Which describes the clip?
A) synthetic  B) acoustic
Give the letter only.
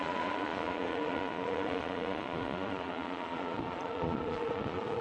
A